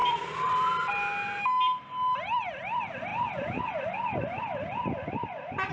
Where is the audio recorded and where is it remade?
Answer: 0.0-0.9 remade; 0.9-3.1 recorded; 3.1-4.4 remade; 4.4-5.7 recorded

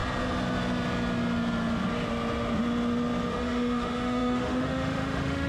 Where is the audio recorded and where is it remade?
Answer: 0.0-3.3 recorded; 3.3-5.5 remade

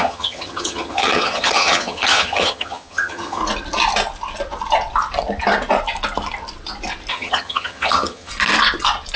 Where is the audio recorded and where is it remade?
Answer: 0.0-3.4 remade; 3.4-7.1 recorded; 7.1-8.3 remade; 8.3-9.2 recorded

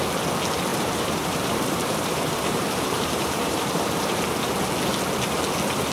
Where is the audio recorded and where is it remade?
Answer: 0.0-0.7 recorded; 0.7-4.2 remade; 4.2-5.9 recorded

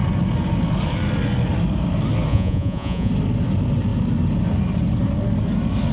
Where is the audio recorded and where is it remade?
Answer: 0.0-2.3 recorded; 2.3-3.1 remade; 3.1-5.9 recorded

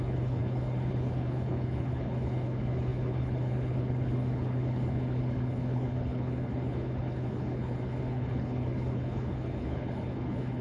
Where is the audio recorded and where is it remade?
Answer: 0.0-10.6 remade